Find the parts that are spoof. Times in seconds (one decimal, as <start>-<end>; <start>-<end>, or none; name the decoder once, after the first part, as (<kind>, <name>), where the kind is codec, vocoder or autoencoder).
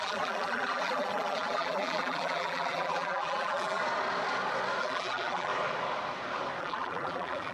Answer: 0.0-3.8 (vocoder, BigVGAN v2); 4.8-5.5; 6.6-7.5